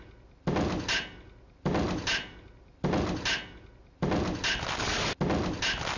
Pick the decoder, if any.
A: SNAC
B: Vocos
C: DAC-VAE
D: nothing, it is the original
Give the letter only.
D